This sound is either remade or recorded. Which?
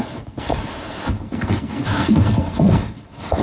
remade